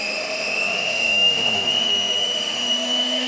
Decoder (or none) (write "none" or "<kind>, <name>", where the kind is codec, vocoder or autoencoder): autoencoder, DAC-VAE